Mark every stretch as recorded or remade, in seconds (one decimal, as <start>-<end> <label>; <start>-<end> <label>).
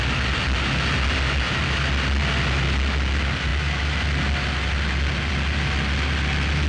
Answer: 0.0-6.7 recorded